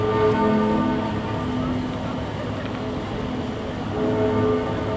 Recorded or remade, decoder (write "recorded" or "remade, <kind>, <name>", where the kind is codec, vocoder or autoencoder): recorded